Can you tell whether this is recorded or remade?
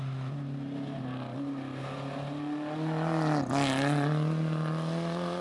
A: recorded